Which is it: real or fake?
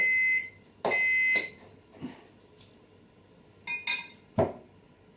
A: real